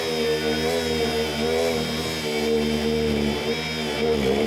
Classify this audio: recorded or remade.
recorded